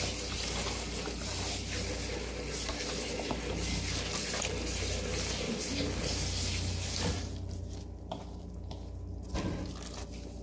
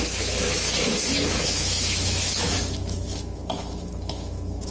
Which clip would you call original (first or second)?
first